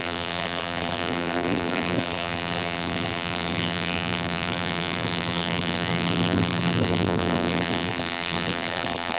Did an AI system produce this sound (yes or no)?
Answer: yes